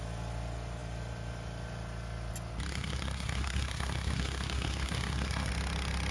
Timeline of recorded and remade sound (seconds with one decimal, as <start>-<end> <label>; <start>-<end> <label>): 0.0-2.7 recorded; 2.7-5.5 remade; 5.5-6.1 recorded